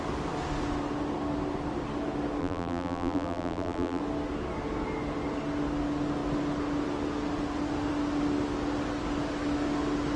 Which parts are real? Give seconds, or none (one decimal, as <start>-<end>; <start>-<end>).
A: 0.0-2.4; 4.0-10.2